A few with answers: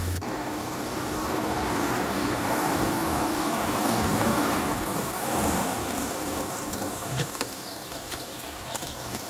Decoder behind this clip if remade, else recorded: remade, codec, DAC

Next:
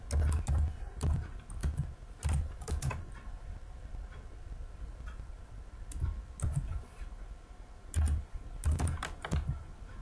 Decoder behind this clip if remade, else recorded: recorded